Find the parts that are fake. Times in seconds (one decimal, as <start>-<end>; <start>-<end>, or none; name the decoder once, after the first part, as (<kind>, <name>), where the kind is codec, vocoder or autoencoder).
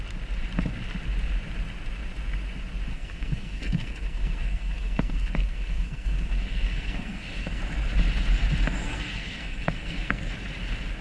2.9-7.6 (codec, SNAC); 8.8-10.3